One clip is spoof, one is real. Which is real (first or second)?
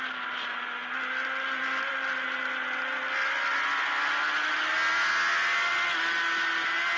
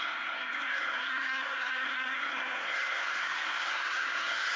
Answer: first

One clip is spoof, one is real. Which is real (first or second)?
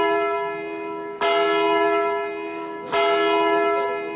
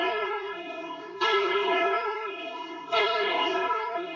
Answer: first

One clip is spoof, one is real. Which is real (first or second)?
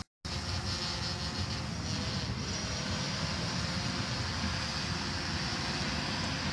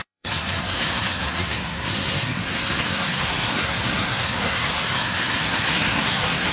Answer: first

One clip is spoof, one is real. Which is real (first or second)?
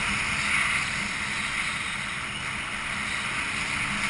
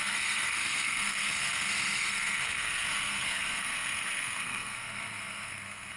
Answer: first